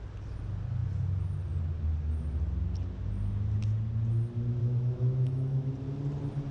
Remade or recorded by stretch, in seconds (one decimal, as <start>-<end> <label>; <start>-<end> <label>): 0.0-4.6 recorded; 4.6-5.7 remade; 5.7-6.5 recorded